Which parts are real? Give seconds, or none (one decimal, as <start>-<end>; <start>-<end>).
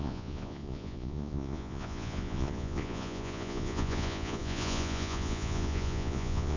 none